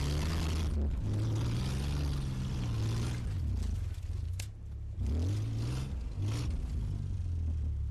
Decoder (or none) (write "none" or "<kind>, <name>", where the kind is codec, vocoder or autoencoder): none